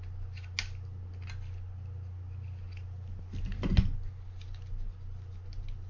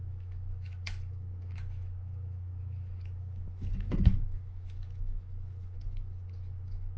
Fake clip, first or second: second